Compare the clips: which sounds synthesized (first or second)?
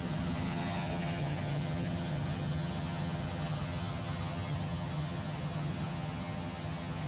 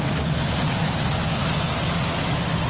first